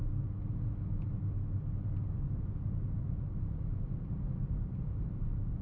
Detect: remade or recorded recorded